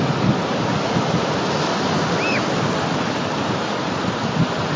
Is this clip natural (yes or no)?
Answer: yes